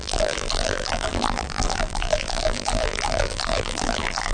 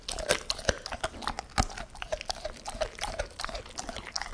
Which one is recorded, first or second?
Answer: second